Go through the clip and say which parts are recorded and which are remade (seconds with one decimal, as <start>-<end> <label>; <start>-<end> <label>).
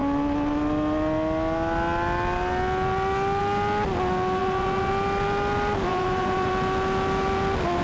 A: 0.0-4.4 recorded; 4.4-4.9 remade; 4.9-5.9 recorded; 5.9-6.5 remade; 6.5-7.8 recorded